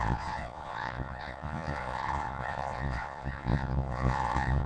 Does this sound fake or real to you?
fake